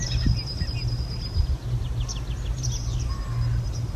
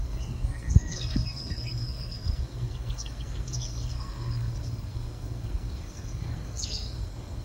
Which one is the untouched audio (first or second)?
first